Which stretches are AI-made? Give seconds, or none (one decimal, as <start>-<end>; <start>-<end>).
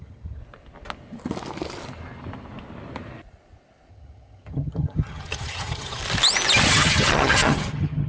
0.0-0.4; 3.9-6.0; 6.7-8.1